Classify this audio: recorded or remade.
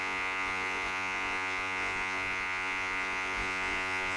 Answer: remade